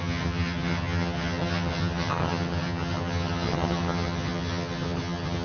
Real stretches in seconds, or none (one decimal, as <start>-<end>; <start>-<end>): none